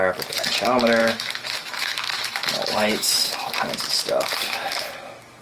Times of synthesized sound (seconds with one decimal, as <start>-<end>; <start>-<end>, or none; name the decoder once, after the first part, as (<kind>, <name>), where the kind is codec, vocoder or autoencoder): 1.0-3.5 (autoencoder, DAC-VAE)